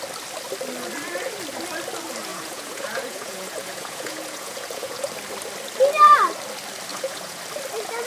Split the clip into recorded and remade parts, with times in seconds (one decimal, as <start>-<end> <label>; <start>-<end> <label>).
0.0-2.3 recorded; 2.3-5.1 remade; 5.1-6.9 recorded; 6.9-7.4 remade; 7.4-8.1 recorded